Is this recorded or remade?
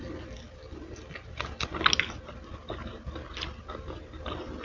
recorded